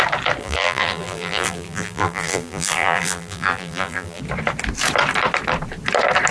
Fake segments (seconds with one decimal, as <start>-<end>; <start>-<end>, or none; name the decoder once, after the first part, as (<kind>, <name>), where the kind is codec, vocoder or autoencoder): 0.4-4.2 (vocoder, BigVGAN v2)